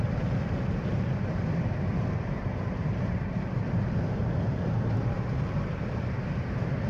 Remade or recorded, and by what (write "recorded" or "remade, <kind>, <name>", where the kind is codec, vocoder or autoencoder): remade, vocoder, BigVGAN v2